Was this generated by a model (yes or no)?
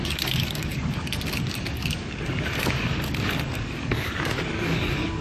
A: yes